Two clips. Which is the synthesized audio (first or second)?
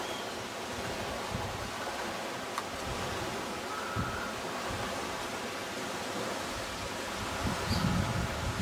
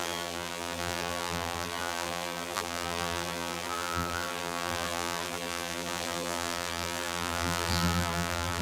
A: second